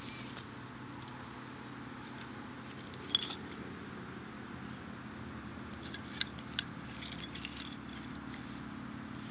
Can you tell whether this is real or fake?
real